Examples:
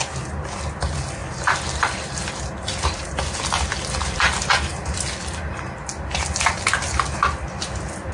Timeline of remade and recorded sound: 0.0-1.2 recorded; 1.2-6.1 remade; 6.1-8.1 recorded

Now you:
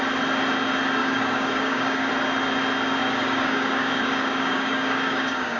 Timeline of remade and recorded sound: 0.0-1.0 recorded; 1.0-2.1 remade; 2.1-3.0 recorded; 3.0-5.6 remade